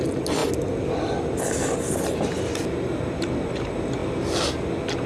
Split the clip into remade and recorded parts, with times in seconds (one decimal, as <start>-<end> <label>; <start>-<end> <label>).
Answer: 0.0-5.1 recorded